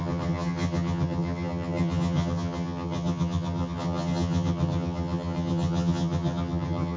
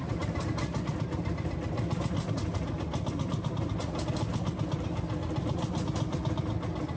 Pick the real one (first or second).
second